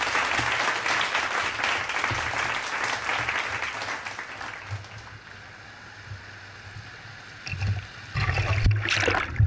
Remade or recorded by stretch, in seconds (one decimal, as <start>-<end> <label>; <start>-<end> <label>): 0.0-3.1 recorded; 3.1-4.6 remade; 4.6-9.5 recorded